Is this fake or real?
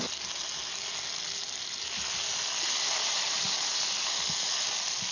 real